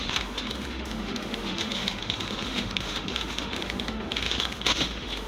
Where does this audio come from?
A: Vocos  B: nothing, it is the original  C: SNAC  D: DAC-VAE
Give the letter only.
D